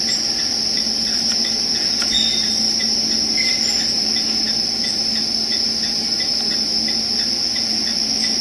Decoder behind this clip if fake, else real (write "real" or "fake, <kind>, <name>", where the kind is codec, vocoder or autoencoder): real